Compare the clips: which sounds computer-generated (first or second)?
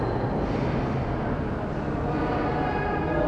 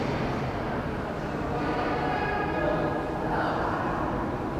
second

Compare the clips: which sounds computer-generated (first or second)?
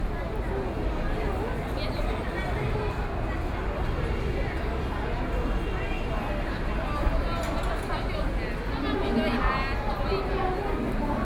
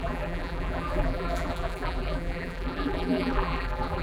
second